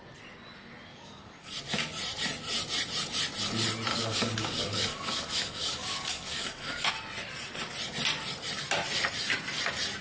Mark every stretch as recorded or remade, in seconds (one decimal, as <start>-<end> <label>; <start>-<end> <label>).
0.0-0.9 recorded; 0.9-1.5 remade; 1.5-3.9 recorded; 3.9-6.9 remade; 6.9-10.0 recorded